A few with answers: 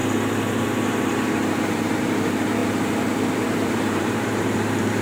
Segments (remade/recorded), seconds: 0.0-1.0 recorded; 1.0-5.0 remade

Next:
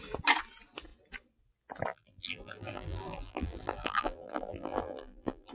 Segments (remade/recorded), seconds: 0.0-1.9 recorded; 1.9-5.5 remade